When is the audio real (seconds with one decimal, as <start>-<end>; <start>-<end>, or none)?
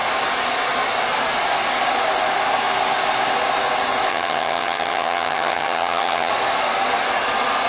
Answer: 0.0-4.1; 6.3-7.7